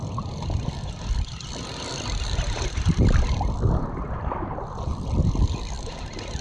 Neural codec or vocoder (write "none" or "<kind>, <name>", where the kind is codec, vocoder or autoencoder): none